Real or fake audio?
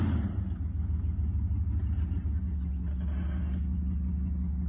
real